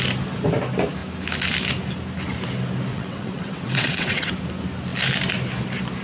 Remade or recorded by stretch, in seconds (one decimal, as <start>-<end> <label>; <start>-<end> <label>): 0.0-2.9 recorded; 2.9-4.3 remade; 4.3-6.0 recorded